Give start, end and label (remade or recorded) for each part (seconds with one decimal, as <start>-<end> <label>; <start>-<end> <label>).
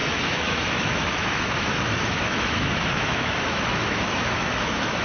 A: 0.0-5.0 remade